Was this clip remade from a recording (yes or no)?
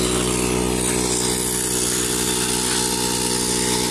no